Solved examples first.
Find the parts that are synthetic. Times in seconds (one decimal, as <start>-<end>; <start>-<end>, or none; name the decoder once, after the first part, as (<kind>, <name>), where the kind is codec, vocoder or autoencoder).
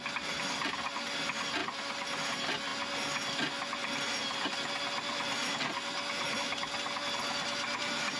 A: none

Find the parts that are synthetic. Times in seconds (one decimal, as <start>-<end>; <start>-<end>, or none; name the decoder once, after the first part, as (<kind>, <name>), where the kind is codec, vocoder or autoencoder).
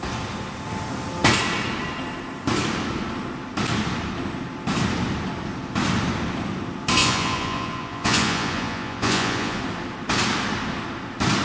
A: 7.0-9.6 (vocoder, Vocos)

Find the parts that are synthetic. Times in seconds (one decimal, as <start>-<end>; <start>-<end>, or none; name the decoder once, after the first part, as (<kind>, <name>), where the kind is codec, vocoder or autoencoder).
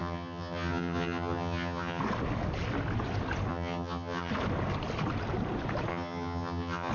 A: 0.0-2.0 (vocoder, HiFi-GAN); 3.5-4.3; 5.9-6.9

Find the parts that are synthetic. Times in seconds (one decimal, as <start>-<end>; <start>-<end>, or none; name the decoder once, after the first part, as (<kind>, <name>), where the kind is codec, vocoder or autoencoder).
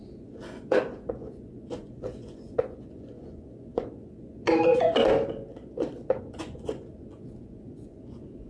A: 0.0-8.5 (vocoder, Vocos)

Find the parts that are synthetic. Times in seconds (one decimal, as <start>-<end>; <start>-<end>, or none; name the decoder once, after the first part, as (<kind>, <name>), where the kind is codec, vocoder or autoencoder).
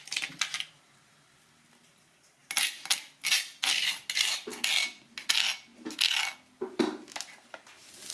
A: none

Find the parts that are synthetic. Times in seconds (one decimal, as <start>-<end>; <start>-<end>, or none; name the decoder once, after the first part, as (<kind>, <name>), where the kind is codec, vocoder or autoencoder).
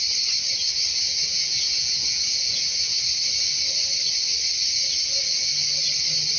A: 0.9-3.0 (vocoder, Vocos)